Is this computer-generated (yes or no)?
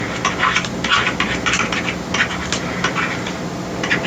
no